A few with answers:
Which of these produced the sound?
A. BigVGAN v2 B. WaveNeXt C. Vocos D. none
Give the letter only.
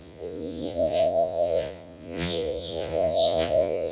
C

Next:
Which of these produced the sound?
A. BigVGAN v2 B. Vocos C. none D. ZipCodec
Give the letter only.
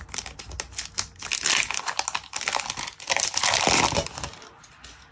C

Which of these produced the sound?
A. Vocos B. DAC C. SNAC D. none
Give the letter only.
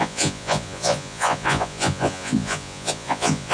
A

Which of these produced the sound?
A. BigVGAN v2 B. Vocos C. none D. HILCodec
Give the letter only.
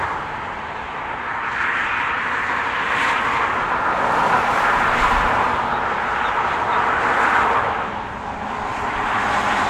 C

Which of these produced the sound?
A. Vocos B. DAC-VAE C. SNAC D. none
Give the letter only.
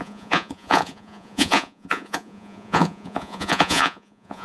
A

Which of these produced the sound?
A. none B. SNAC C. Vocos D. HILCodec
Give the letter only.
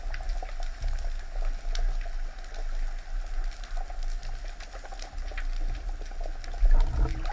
A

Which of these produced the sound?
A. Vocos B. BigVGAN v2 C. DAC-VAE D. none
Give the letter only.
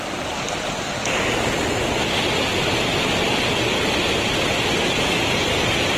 D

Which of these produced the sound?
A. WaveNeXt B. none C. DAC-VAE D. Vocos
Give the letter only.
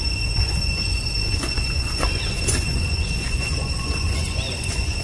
D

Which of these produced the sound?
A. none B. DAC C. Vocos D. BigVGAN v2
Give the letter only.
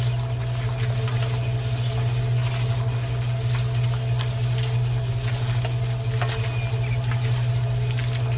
A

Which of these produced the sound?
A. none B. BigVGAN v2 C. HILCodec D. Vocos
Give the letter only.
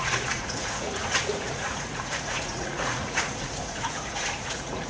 D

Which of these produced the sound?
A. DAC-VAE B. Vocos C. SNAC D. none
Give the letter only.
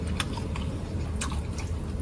D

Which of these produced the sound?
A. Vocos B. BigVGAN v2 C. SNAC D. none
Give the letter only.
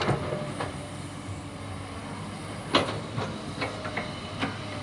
D